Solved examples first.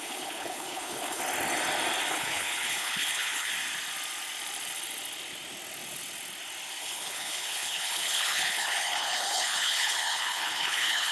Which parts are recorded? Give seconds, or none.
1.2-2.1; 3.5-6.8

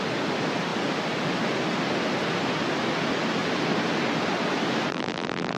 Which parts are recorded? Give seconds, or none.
0.0-4.9

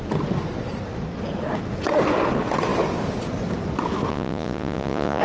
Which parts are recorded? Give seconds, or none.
0.0-4.1

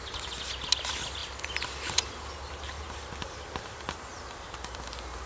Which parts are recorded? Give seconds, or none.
0.0-5.3

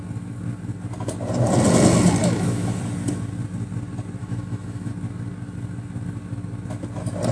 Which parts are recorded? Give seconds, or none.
0.0-2.2; 2.8-4.2; 4.9-7.3

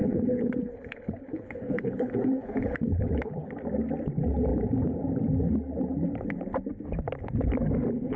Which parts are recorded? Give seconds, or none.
3.5-8.2

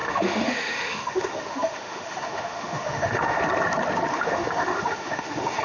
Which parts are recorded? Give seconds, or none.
3.4-4.1

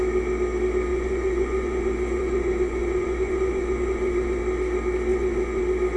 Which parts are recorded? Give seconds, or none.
0.0-0.9; 4.4-5.1; 5.6-6.0